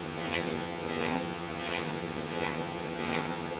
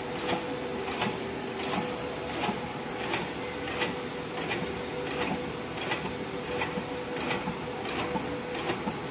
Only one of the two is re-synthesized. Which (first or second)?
first